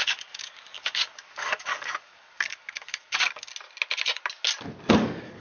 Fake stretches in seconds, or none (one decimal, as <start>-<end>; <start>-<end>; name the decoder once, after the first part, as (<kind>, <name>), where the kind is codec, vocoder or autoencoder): 0.0-3.5 (codec, DAC); 4.9-5.4